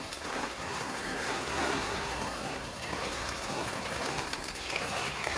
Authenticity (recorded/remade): remade